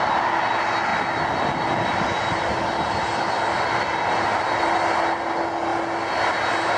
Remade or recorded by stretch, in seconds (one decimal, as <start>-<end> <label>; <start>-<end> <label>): 0.0-6.8 recorded